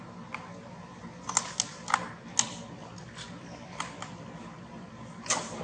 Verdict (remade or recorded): recorded